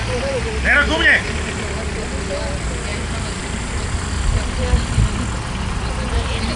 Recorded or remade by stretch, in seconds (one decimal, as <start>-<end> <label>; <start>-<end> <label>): 0.0-2.9 recorded; 2.9-3.8 remade; 3.8-6.6 recorded